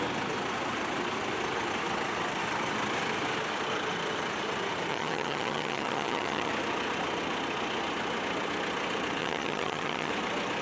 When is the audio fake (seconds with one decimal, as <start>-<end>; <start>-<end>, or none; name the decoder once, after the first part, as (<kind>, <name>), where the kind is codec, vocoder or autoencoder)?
4.9-6.5 (vocoder, HiFi-GAN); 9.2-10.1